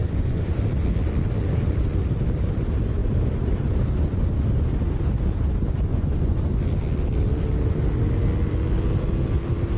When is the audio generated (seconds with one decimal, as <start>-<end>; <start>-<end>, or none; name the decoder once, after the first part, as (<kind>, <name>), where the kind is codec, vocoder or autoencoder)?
0.0-0.6 (vocoder, Vocos); 5.9-6.5

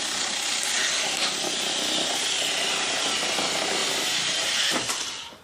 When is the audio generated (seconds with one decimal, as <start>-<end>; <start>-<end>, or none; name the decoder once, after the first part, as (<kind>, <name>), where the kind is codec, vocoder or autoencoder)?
none

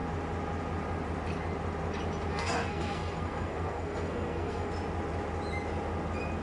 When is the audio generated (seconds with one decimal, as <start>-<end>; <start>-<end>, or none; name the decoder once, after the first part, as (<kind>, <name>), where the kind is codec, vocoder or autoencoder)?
2.3-4.7 (codec, SNAC)

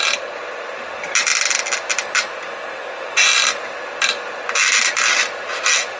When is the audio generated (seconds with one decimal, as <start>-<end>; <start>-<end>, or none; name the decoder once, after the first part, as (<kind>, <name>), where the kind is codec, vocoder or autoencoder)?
none